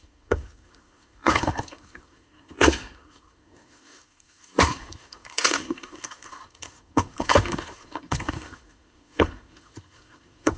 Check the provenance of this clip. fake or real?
fake